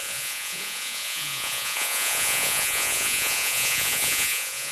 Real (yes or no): no